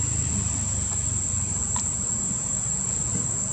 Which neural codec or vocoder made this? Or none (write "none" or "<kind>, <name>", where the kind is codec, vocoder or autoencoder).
none